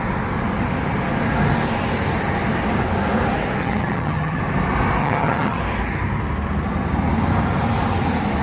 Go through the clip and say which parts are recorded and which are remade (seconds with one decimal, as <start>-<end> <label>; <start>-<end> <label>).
0.0-3.6 recorded; 3.6-4.4 remade; 4.4-5.0 recorded; 5.0-5.6 remade; 5.6-8.4 recorded